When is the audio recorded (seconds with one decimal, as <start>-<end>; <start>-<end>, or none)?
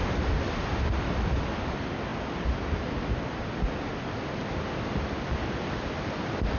0.0-6.6